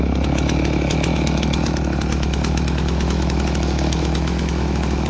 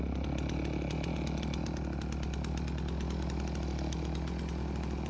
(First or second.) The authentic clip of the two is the second